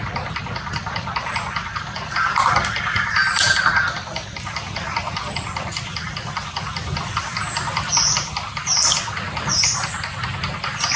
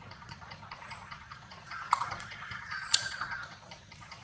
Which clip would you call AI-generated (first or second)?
second